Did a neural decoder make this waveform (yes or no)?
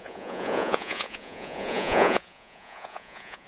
yes